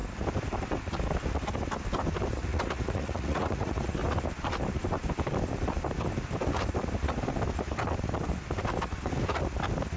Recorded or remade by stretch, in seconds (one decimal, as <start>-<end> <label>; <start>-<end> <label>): 0.0-2.5 recorded; 2.5-3.9 remade; 3.9-10.0 recorded